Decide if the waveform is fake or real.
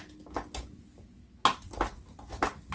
real